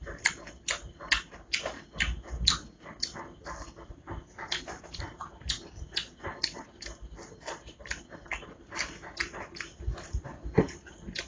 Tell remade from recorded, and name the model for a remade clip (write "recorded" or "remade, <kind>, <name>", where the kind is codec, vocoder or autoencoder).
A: recorded